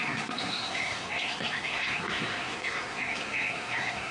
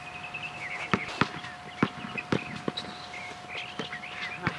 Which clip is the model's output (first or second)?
first